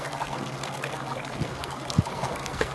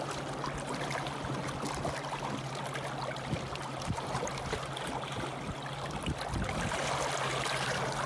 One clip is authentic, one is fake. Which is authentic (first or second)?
second